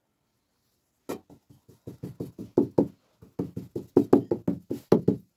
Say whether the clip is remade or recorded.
recorded